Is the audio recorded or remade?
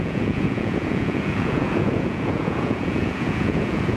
remade